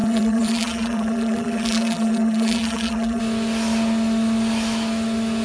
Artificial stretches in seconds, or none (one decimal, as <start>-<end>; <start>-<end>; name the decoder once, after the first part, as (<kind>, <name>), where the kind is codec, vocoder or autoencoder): 0.0-3.2 (vocoder, BigVGAN v2)